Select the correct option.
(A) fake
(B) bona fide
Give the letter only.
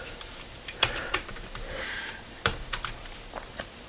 A